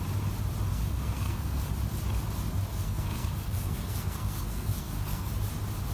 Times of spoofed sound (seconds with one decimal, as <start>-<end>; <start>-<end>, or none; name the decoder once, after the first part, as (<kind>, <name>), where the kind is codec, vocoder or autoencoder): 0.7-1.7 (codec, SNAC); 2.7-5.3